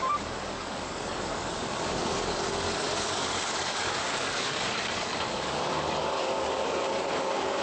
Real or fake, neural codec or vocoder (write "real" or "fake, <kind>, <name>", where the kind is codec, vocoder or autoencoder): fake, codec, DAC